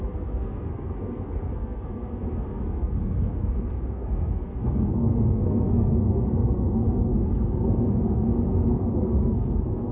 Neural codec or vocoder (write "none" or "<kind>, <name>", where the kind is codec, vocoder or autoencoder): codec, SNAC